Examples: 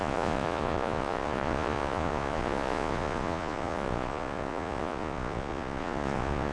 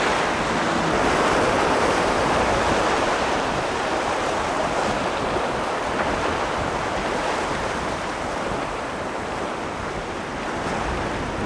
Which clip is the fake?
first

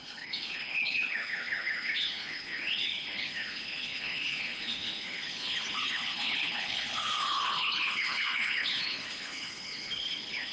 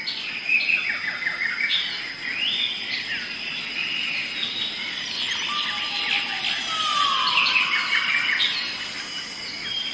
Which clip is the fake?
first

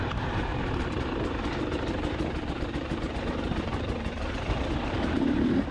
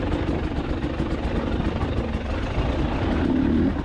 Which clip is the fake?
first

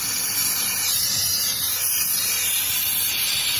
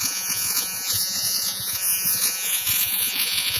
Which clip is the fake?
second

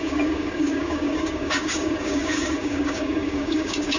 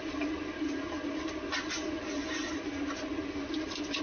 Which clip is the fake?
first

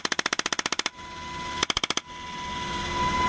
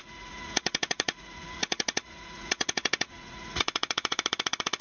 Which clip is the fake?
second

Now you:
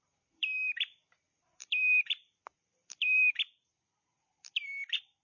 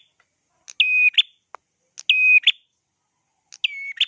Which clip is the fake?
first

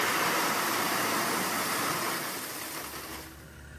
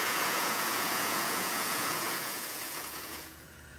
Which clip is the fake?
second